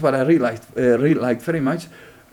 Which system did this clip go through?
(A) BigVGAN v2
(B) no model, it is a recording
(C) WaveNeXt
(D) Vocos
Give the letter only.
D